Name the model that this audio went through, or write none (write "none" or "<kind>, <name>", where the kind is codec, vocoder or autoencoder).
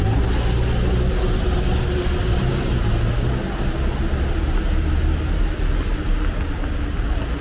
none